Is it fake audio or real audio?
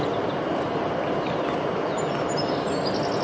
real